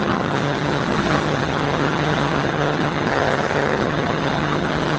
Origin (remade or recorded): remade